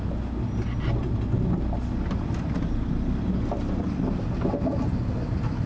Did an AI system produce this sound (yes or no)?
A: no